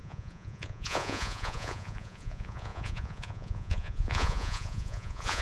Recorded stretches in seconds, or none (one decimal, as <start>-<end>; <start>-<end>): none